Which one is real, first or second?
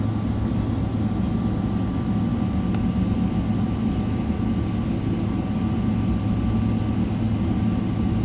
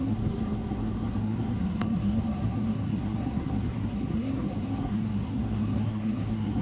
first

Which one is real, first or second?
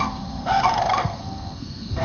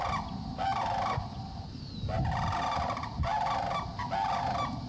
second